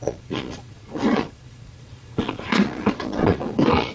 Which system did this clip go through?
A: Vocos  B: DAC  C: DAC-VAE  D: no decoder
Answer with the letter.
A